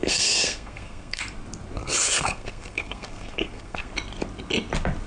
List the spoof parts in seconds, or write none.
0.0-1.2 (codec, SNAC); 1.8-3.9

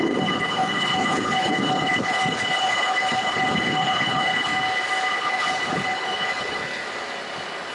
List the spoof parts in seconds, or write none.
0.0-4.5 (codec, HILCodec); 5.1-6.8

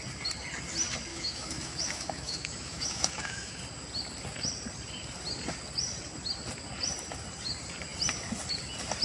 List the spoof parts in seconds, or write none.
1.1-3.6 (autoencoder, DAC-VAE)